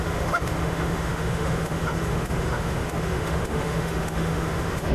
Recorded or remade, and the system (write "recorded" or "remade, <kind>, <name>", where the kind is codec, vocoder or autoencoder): remade, autoencoder, DAC-VAE